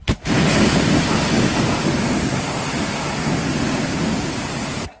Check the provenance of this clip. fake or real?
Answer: real